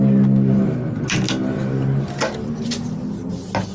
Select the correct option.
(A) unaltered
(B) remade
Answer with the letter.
A